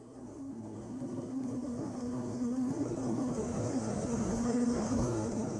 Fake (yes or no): yes